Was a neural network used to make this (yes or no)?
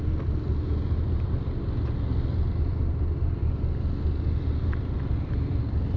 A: no